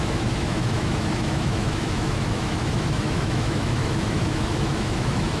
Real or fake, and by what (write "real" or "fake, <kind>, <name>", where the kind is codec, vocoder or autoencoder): fake, autoencoder, DAC-VAE